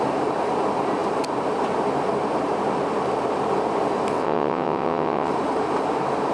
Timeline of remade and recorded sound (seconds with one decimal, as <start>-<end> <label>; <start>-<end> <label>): 0.0-4.1 recorded; 4.1-5.3 remade; 5.3-6.3 recorded